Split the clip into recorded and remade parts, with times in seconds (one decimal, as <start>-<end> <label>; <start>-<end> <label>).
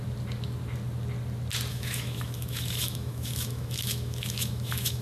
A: 0.0-1.7 recorded; 1.7-5.0 remade